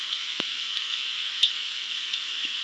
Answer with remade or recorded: remade